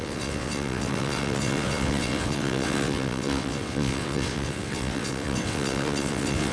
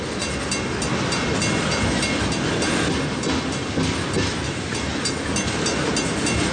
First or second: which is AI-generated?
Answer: first